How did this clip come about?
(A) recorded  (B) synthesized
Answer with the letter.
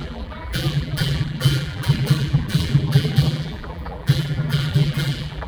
B